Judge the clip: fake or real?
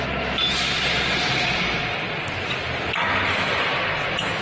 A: real